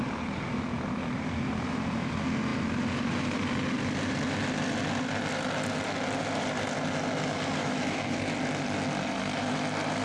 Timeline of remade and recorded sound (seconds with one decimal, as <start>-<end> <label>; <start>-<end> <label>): 0.0-7.6 recorded; 7.6-8.2 remade; 8.2-10.0 recorded